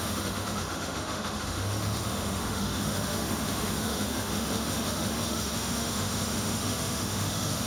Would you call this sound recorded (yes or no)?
no